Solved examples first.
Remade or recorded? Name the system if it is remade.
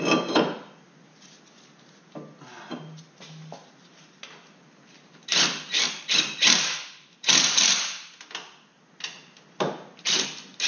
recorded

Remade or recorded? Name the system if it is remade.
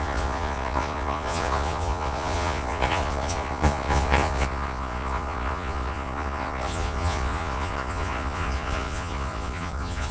remade, vocoder, Vocos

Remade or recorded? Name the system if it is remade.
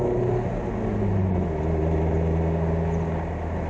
recorded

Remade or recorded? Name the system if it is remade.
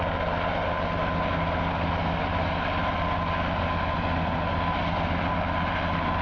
recorded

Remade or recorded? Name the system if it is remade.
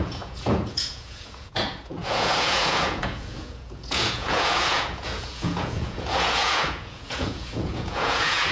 remade, vocoder, Vocos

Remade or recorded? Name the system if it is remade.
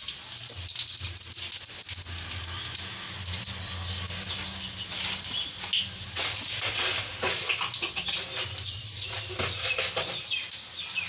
recorded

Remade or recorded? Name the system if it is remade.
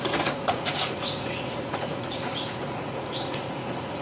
remade, vocoder, Vocos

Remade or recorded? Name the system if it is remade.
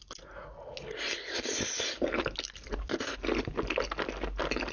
recorded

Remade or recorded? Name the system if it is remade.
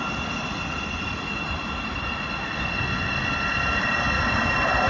recorded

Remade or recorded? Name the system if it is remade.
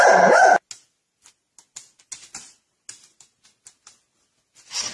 recorded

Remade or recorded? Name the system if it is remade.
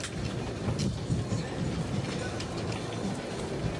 recorded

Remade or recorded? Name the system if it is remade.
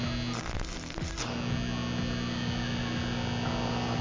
recorded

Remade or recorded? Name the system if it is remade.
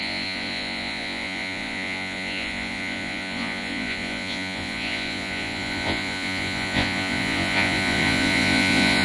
remade, vocoder, Vocos